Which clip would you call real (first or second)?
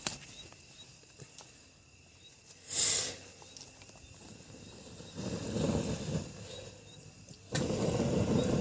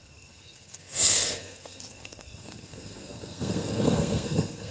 first